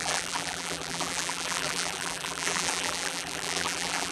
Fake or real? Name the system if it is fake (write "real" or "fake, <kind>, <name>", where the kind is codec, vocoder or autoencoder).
fake, vocoder, BigVGAN v2